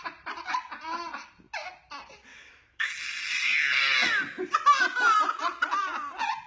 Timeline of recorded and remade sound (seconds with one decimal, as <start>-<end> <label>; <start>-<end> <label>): 0.0-2.3 recorded; 2.3-2.9 remade; 2.9-6.5 recorded